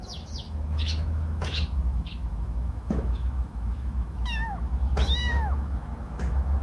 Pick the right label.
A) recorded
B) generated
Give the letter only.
B